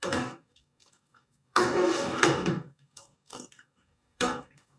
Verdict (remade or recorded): remade